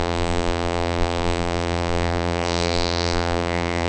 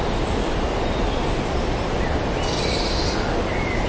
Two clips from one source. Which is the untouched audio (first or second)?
second